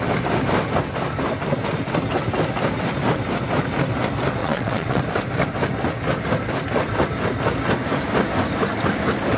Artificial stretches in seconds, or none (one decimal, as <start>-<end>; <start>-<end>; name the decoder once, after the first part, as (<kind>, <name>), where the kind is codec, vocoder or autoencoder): 4.4-5.0 (vocoder, WaveNeXt)